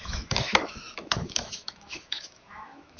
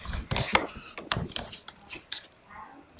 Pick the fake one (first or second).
first